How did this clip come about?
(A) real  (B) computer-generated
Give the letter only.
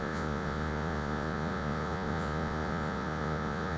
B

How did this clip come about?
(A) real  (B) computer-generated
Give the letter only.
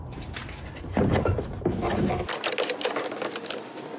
A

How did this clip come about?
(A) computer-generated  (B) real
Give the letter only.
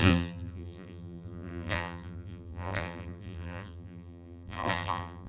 A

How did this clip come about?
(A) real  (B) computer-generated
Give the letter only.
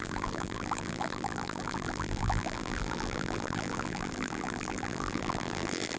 B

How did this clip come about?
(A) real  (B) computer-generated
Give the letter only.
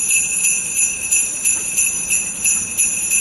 A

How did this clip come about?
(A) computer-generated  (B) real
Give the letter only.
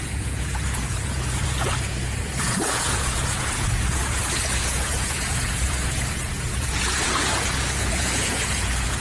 A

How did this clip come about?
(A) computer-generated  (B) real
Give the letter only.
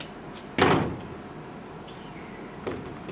B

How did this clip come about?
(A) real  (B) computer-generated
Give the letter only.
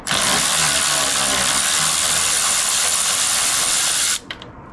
B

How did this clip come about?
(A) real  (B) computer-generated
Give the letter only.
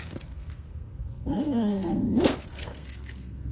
B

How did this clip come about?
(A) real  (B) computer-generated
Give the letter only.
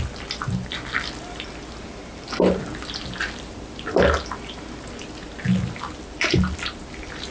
A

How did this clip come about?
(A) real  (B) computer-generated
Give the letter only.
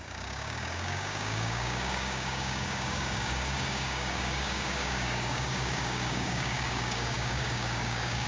B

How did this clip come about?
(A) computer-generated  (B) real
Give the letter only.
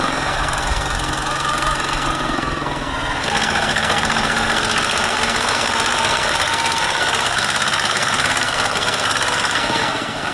A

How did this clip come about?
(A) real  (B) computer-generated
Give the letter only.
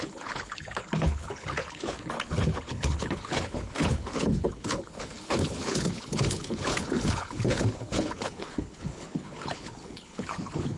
B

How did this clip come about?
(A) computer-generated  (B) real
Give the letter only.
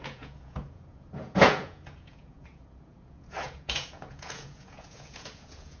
A